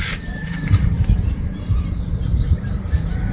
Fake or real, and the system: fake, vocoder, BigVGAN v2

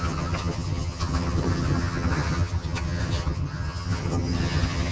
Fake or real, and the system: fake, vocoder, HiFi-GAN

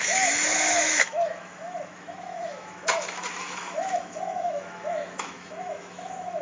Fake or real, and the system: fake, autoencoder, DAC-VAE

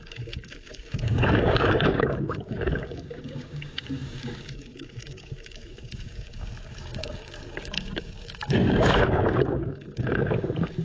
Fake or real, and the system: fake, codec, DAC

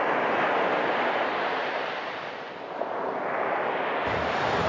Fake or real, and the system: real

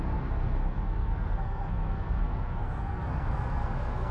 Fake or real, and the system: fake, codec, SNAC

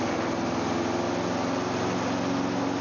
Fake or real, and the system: real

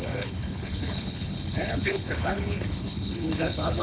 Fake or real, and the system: fake, codec, HILCodec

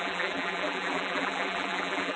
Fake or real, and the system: fake, vocoder, BigVGAN v2